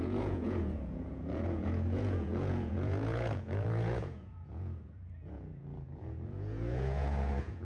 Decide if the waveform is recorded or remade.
remade